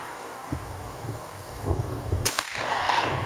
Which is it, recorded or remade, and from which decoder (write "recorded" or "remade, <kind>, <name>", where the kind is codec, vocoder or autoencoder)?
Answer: remade, codec, DAC